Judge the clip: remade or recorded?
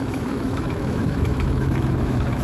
remade